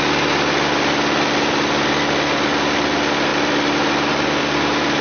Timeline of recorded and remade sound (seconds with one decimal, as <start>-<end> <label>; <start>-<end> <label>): 0.0-5.0 recorded